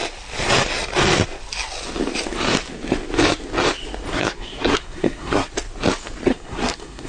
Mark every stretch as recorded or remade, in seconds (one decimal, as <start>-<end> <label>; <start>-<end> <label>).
0.0-4.1 recorded; 4.1-5.5 remade; 5.5-6.3 recorded; 6.3-7.1 remade